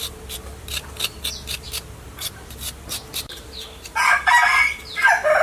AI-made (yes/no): no